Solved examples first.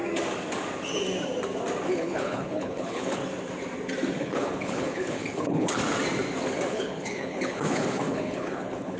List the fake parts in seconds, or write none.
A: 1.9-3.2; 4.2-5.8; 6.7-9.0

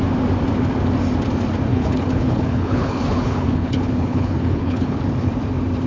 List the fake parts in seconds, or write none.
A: 1.7-5.0

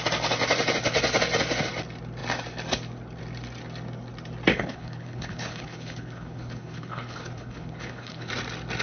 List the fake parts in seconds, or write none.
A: 4.5-8.3

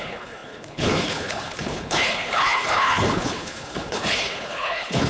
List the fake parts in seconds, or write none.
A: 0.0-5.1